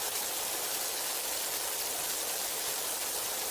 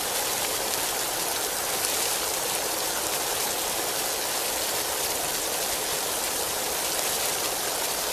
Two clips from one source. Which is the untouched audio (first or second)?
first